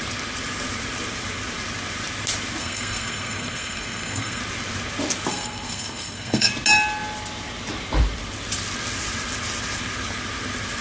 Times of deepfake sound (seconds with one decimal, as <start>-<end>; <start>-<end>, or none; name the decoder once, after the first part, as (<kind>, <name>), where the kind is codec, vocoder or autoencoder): 2.6-4.4 (codec, SNAC); 5.3-6.5